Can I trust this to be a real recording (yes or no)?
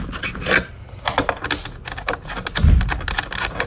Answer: yes